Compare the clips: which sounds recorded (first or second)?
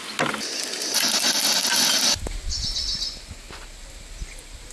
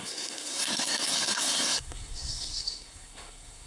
first